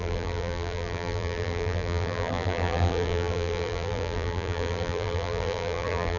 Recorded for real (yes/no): no